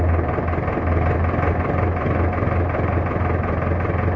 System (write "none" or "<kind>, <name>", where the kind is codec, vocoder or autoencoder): none